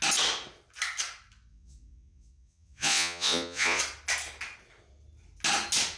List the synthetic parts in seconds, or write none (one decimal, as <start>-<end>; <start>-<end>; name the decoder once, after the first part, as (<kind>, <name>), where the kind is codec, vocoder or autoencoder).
1.5-3.8 (vocoder, Vocos)